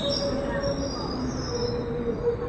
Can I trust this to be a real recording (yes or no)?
yes